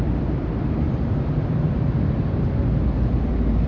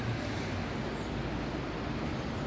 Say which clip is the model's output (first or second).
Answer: first